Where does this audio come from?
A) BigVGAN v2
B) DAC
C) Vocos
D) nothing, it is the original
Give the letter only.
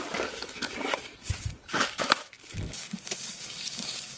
B